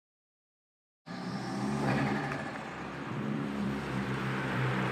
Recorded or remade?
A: remade